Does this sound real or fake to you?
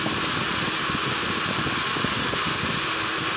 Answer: real